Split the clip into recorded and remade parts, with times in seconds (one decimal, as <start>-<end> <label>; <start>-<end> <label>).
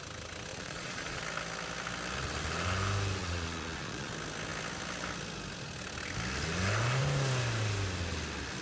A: 0.0-0.5 recorded; 0.5-1.2 remade; 1.2-3.2 recorded; 3.2-4.1 remade; 4.1-8.6 recorded